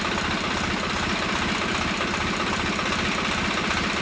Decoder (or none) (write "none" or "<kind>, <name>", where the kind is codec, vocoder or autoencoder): none